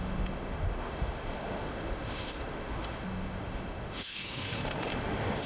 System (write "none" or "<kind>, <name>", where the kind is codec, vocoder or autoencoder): autoencoder, DAC-VAE